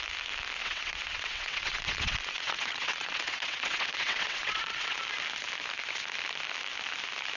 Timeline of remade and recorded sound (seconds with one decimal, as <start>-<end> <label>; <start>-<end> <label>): 0.0-0.6 recorded; 0.6-5.0 remade; 5.0-7.4 recorded